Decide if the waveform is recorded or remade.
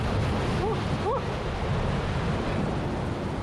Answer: recorded